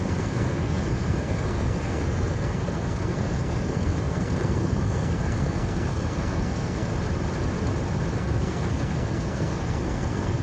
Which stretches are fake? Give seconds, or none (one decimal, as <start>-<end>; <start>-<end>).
0.0-6.9; 8.1-10.4